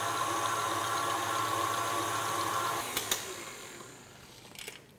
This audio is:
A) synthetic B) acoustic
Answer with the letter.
B